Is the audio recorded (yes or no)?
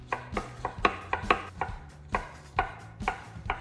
yes